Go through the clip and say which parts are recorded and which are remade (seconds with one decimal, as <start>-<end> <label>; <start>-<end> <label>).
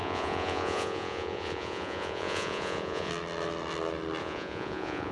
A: 0.0-3.1 remade; 3.1-4.2 recorded; 4.2-5.1 remade